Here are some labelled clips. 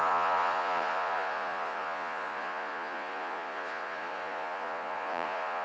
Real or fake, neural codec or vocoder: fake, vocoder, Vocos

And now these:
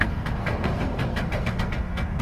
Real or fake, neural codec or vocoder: fake, codec, SNAC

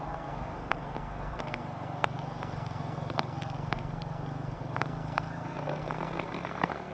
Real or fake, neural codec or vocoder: fake, codec, SNAC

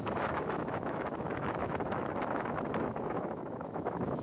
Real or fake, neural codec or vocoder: fake, autoencoder, DAC-VAE